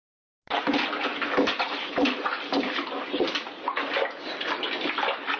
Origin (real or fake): real